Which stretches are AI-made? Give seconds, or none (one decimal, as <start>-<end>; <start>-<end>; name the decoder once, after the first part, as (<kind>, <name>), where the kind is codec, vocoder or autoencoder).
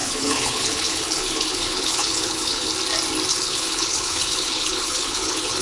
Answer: 0.0-2.7 (codec, HILCodec); 3.3-5.6